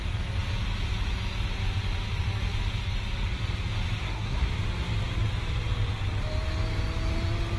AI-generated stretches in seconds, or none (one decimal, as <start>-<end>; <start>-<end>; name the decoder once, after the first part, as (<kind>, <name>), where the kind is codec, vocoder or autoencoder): 4.0-4.5 (codec, SNAC)